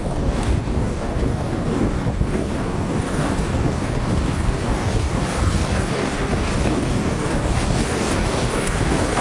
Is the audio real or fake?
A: fake